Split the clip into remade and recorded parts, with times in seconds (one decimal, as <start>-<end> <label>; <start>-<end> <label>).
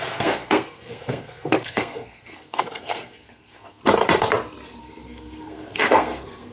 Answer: 0.0-3.8 remade; 3.8-4.8 recorded; 4.8-6.5 remade